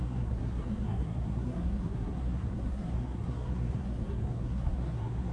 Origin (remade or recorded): remade